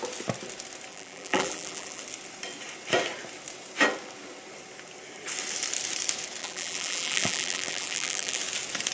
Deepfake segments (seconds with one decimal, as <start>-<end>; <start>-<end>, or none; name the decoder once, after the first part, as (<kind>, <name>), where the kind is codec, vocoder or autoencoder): 0.9-2.0 (vocoder, BigVGAN v2); 6.4-8.4